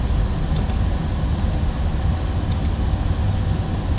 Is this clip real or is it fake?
real